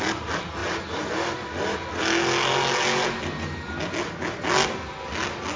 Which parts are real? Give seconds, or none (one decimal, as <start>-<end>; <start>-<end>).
0.0-5.6

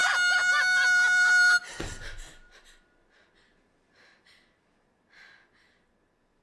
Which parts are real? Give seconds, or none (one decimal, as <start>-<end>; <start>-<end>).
0.0-6.4

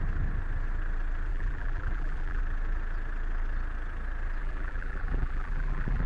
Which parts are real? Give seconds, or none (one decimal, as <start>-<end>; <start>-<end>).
0.0-1.3; 2.4-4.4

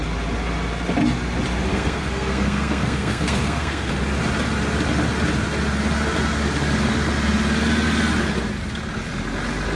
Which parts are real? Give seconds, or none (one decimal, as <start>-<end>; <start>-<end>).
0.0-1.7; 3.9-9.8

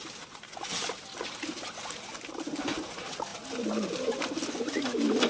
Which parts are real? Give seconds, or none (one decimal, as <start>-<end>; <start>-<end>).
0.0-5.3